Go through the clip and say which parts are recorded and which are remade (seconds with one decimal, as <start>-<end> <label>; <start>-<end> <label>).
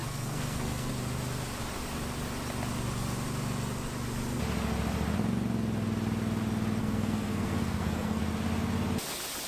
0.0-0.9 remade; 0.9-6.8 recorded; 6.8-8.2 remade; 8.2-9.5 recorded